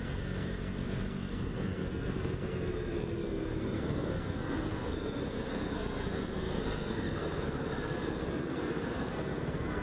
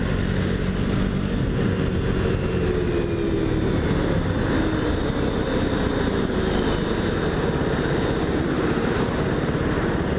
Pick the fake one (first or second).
first